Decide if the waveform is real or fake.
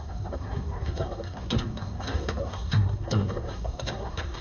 fake